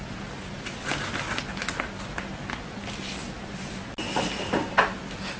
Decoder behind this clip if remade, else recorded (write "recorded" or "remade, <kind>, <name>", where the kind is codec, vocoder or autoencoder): recorded